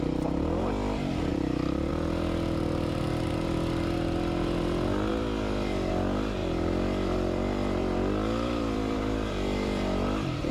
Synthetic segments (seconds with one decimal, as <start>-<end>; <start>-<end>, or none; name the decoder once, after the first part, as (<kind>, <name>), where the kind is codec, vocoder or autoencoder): 1.3-1.9 (vocoder, BigVGAN v2); 5.1-5.9; 6.4-10.5